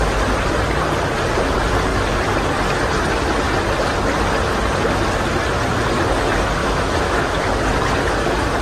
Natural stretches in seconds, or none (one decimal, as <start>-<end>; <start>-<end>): 0.0-6.6; 7.6-8.6